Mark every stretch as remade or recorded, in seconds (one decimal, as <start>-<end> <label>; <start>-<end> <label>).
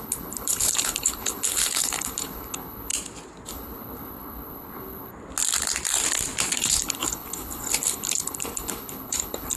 0.0-2.9 remade; 2.9-3.5 recorded; 3.5-5.1 remade; 5.1-6.6 recorded; 6.6-9.6 remade